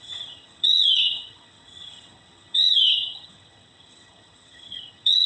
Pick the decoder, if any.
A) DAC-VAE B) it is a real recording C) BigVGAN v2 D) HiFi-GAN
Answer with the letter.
D